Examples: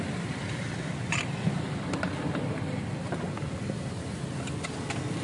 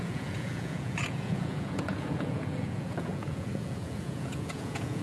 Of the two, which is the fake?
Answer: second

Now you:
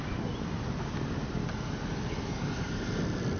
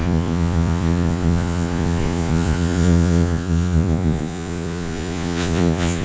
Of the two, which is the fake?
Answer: second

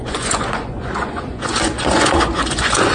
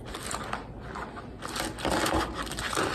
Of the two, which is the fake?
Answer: first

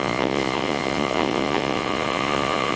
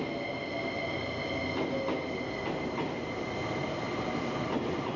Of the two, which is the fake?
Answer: first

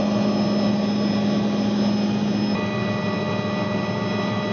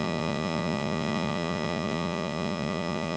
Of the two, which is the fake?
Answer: second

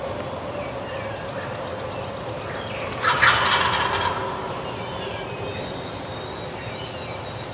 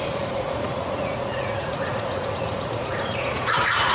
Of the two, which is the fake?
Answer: second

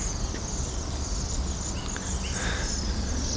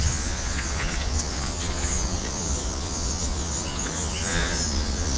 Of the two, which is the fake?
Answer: second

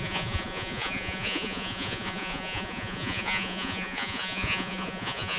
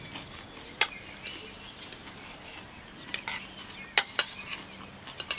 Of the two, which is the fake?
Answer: first